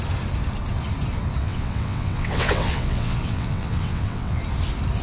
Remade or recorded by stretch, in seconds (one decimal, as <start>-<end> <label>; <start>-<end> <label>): 0.0-1.4 recorded; 1.4-4.4 remade; 4.4-5.0 recorded